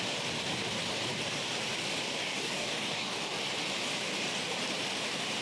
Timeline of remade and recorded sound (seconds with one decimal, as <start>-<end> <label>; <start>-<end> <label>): 0.0-2.2 recorded; 2.2-3.4 remade; 3.4-5.4 recorded